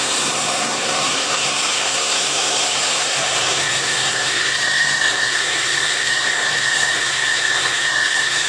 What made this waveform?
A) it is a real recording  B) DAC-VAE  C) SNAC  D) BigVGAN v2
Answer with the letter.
C